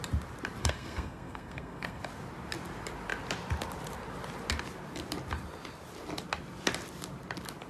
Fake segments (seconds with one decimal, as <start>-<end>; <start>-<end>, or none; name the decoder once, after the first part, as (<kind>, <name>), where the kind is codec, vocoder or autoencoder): 0.6-2.0 (codec, SNAC)